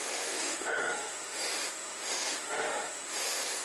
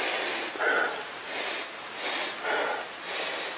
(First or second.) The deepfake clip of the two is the first